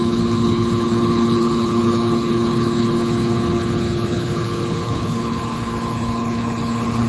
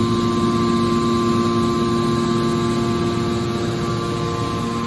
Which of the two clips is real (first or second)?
second